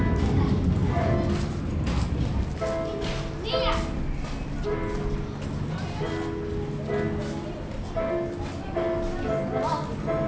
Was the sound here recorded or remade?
recorded